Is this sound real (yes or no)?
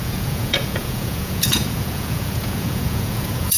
no